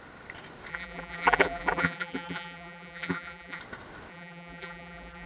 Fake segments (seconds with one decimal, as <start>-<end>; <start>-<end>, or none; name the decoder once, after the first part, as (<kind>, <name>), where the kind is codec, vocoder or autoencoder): 0.7-3.6 (vocoder, BigVGAN v2); 4.1-5.3